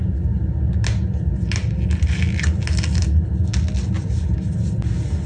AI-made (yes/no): no